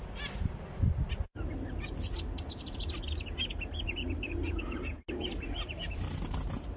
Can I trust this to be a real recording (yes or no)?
yes